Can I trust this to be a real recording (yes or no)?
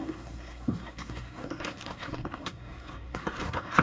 no